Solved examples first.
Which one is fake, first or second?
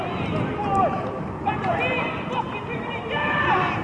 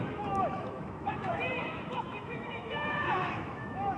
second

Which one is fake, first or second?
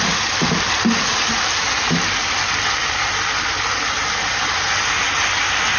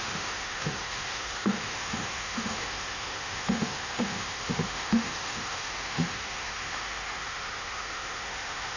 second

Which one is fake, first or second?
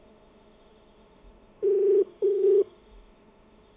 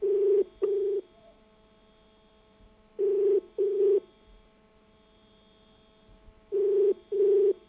first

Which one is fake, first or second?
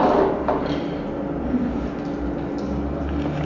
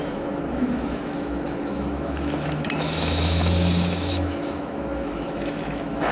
second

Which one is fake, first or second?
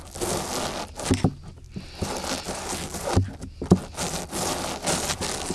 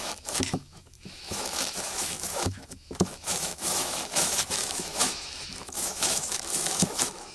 second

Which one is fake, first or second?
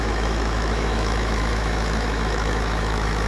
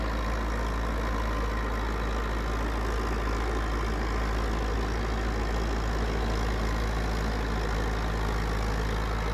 first